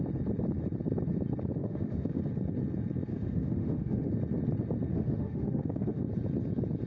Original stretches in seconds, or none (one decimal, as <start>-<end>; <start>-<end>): 0.0-1.6; 2.2-3.1; 4.1-4.9; 6.0-6.9